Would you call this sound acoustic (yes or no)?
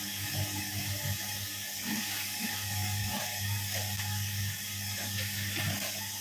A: no